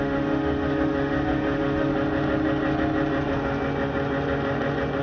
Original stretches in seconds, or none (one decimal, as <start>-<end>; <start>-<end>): 1.9-5.0